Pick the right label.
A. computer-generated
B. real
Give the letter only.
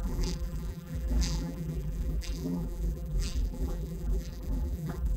A